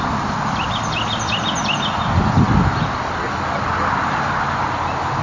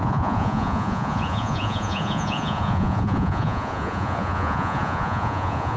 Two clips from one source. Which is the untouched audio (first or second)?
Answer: first